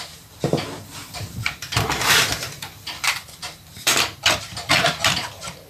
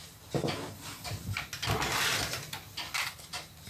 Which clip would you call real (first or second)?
second